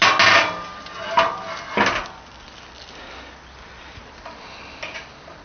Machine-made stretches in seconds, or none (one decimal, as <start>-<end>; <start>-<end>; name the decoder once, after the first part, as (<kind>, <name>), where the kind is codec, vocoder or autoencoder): none